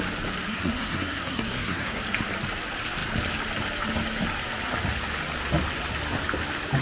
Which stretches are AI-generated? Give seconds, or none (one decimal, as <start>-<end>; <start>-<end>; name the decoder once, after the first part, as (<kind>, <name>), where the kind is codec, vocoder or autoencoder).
0.5-2.0 (codec, SNAC)